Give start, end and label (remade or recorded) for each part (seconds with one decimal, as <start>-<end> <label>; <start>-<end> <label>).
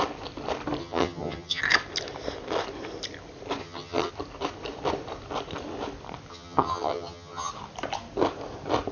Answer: 0.0-0.8 recorded; 0.8-1.6 remade; 1.6-3.6 recorded; 3.6-4.1 remade; 4.1-6.3 recorded; 6.3-7.5 remade; 7.5-8.9 recorded